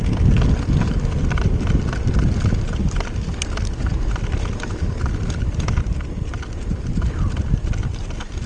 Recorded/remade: recorded